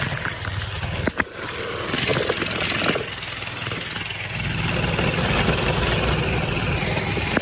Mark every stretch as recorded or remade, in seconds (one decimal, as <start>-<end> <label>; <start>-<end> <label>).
0.0-7.4 recorded

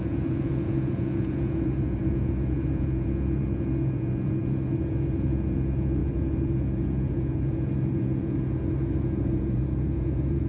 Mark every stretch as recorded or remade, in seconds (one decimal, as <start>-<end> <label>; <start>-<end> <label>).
0.0-10.5 remade

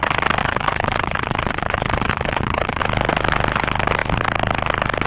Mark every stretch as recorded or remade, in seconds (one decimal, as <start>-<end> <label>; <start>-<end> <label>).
0.0-0.4 recorded; 0.4-2.8 remade; 2.8-5.1 recorded

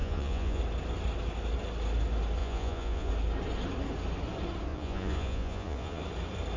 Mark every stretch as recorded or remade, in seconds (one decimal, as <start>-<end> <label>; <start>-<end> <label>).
0.0-0.6 remade; 0.6-2.4 recorded; 2.4-3.1 remade; 3.1-4.7 recorded; 4.7-6.0 remade; 6.0-6.6 recorded

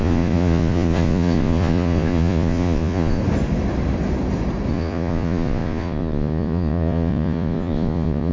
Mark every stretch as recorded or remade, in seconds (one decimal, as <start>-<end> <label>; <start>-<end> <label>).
0.0-3.2 remade; 3.2-4.7 recorded; 4.7-8.3 remade

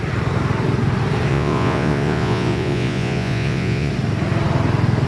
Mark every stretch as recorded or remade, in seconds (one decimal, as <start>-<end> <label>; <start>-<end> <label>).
0.0-1.3 recorded; 1.3-3.9 remade; 3.9-5.1 recorded

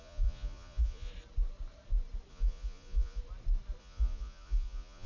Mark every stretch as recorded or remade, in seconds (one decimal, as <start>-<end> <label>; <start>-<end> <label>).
0.0-1.1 remade; 1.1-2.3 recorded; 2.3-3.2 remade; 3.2-3.8 recorded; 3.8-5.1 remade

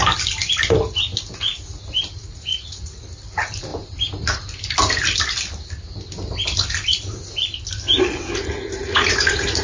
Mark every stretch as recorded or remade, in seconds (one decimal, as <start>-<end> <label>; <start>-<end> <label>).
0.0-2.2 recorded; 2.2-3.0 remade; 3.0-8.8 recorded; 8.8-9.6 remade